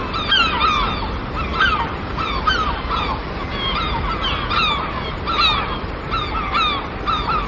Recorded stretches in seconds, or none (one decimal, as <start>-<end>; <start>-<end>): 0.0-7.5